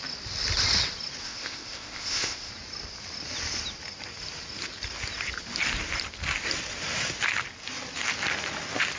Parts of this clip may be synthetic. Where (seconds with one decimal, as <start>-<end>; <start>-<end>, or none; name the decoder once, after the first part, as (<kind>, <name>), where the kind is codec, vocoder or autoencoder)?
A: 1.2-2.5 (codec, ZipCodec)